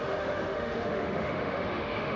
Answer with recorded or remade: remade